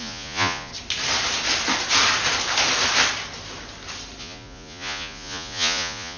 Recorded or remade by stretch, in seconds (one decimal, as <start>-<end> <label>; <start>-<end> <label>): 0.0-0.7 remade; 0.7-4.2 recorded; 4.2-6.2 remade